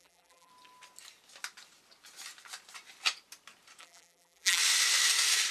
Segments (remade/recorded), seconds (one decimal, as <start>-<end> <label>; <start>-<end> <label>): 0.0-0.5 remade; 0.5-3.8 recorded; 3.8-4.6 remade; 4.6-5.5 recorded